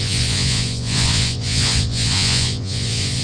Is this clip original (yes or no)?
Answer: no